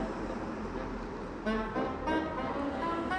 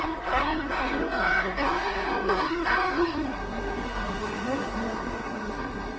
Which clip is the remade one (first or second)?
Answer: second